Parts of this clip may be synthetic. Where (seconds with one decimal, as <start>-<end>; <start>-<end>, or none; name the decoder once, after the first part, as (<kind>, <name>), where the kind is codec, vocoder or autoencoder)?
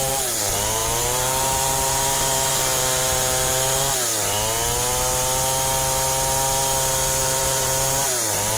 0.0-4.1 (vocoder, BigVGAN v2); 7.2-8.6